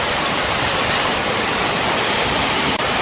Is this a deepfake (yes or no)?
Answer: no